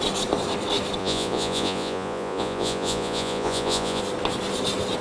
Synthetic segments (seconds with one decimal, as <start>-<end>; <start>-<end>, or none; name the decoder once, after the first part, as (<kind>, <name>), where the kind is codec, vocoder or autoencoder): 1.0-4.0 (vocoder, Vocos)